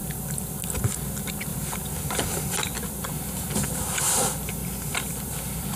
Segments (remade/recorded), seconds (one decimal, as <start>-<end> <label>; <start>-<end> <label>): 0.0-1.5 recorded; 1.5-3.1 remade; 3.1-4.6 recorded; 4.6-5.8 remade